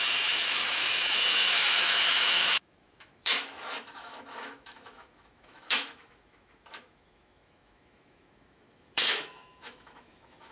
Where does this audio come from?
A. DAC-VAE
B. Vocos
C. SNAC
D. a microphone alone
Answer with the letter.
A